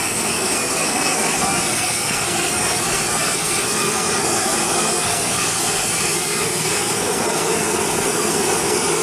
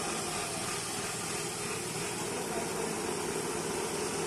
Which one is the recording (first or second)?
second